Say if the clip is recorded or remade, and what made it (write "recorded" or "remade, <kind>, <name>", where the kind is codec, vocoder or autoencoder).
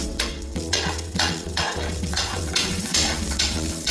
remade, vocoder, WaveNeXt